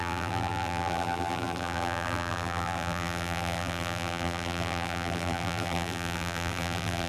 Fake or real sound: fake